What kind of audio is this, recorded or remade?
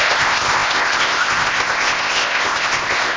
remade